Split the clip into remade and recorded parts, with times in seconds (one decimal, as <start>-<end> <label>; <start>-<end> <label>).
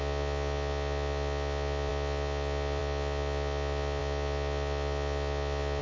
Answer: 0.0-5.8 recorded